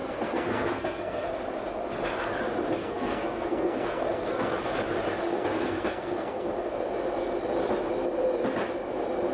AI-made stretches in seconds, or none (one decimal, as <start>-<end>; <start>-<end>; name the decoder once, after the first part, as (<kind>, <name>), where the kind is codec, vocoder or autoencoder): 0.0-1.3 (codec, SNAC); 2.8-4.7; 5.3-6.5